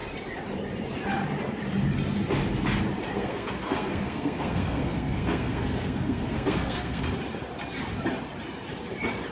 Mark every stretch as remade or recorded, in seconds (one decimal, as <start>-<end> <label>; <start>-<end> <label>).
0.0-3.1 recorded; 3.1-7.0 remade; 7.0-9.3 recorded